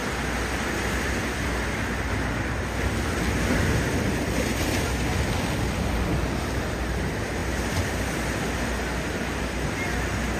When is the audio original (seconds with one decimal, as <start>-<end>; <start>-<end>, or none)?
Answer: 0.0-10.4